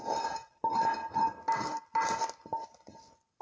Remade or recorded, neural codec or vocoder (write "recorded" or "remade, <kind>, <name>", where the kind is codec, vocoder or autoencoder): recorded